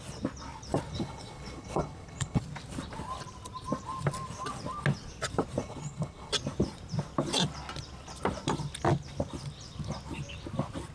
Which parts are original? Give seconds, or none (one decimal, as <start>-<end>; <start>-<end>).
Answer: 0.0-0.9; 2.4-5.6; 6.3-10.9